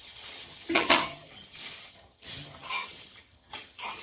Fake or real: fake